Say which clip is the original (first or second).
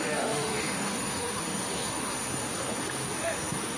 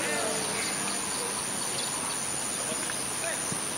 second